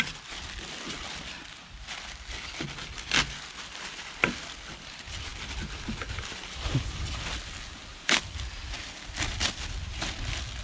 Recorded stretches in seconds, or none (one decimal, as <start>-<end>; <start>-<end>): 0.0-10.6